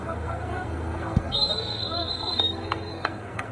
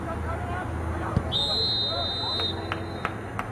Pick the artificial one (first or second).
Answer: first